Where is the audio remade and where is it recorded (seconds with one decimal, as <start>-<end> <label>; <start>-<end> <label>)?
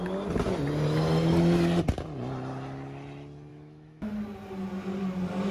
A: 0.0-3.5 recorded; 3.5-4.1 remade; 4.1-5.5 recorded